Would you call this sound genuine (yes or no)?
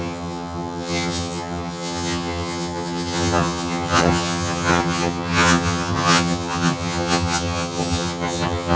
no